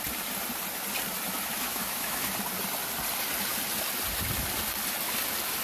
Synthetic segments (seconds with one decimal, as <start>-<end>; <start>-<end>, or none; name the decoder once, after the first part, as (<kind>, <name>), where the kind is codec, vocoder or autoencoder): 1.5-2.2 (autoencoder, DAC-VAE)